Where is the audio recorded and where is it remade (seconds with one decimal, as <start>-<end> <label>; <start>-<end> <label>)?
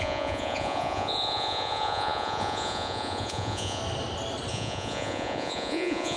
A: 0.0-3.8 remade; 3.8-4.5 recorded; 4.5-6.2 remade